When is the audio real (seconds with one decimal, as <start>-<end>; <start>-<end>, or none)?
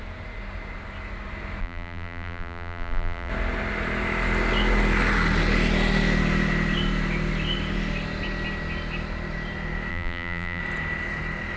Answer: 0.0-1.6; 3.3-9.9; 10.6-11.6